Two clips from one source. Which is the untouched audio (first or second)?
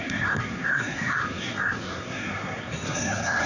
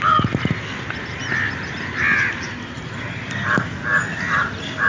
second